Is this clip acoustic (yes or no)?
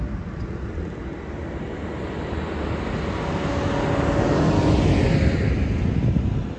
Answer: yes